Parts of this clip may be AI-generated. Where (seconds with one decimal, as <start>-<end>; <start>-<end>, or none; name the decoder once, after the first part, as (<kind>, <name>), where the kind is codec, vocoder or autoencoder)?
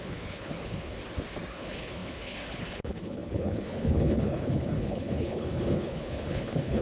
0.0-1.0 (codec, HILCodec); 1.5-6.8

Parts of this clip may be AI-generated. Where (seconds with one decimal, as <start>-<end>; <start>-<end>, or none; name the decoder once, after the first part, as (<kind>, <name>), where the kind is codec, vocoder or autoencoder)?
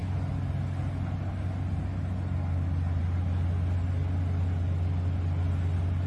none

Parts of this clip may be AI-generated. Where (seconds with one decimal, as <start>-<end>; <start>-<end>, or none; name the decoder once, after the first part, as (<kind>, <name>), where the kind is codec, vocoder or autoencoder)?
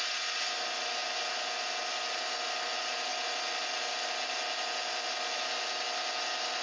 none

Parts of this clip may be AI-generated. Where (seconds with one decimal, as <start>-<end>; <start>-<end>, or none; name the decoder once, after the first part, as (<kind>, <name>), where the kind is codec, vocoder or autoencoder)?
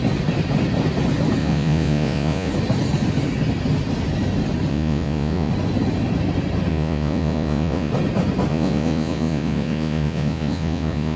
1.4-2.5 (vocoder, Vocos); 4.7-5.5; 6.7-7.9; 8.5-11.2